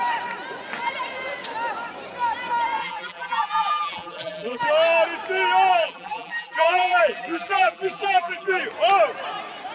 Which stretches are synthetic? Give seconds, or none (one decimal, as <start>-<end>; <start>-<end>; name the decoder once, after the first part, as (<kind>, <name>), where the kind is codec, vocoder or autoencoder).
2.8-4.6 (vocoder, BigVGAN v2); 5.7-8.6